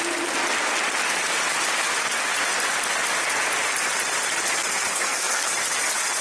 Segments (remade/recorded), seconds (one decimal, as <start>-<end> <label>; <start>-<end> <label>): 0.0-4.9 recorded; 4.9-5.5 remade; 5.5-6.2 recorded